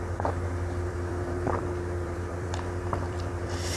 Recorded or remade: remade